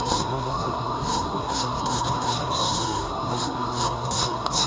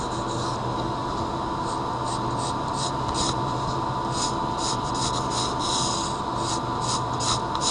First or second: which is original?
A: second